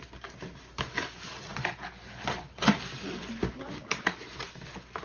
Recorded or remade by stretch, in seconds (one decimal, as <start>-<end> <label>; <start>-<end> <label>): 0.0-5.0 recorded